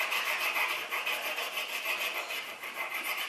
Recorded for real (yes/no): yes